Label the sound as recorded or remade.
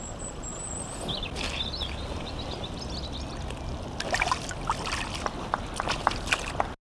recorded